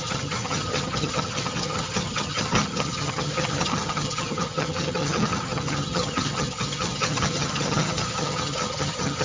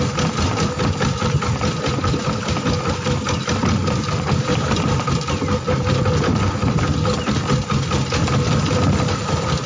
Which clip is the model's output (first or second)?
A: first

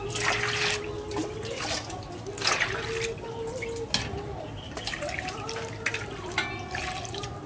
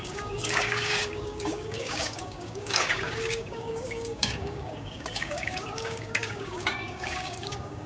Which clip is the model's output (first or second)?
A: second